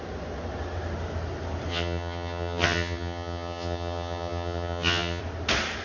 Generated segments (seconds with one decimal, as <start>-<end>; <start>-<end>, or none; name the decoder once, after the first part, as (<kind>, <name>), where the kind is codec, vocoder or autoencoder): 1.7-5.2 (vocoder, HiFi-GAN)